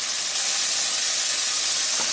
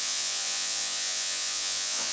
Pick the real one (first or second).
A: first